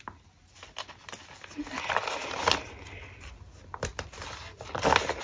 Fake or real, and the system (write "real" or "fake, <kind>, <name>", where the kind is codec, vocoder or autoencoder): real